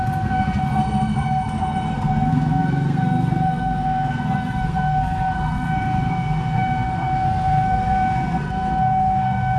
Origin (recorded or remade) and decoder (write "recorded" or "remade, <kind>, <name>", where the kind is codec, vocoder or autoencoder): remade, codec, SNAC